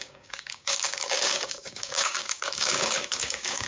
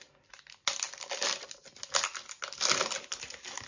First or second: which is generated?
first